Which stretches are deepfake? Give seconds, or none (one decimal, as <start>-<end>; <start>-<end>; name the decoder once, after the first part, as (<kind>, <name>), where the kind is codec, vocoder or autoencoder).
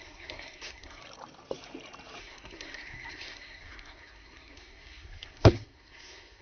0.0-1.0 (codec, SNAC); 2.2-6.4